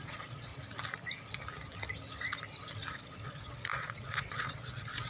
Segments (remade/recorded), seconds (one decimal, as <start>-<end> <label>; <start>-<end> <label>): 0.0-0.5 remade; 0.5-2.9 recorded; 2.9-5.1 remade